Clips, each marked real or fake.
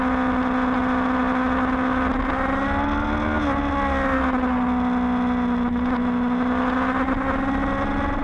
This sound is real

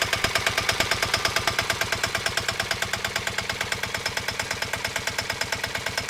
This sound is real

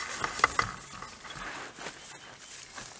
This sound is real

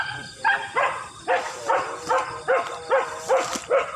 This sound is real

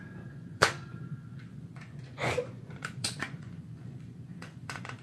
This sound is fake